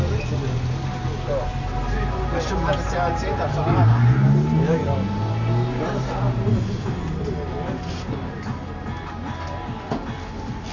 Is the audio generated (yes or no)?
no